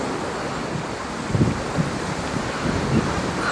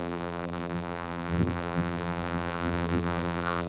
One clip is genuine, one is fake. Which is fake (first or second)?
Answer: second